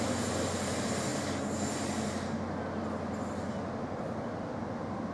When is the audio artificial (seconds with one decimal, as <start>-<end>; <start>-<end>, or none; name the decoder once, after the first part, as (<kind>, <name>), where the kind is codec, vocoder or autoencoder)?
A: none